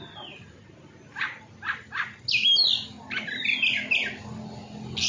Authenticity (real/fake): real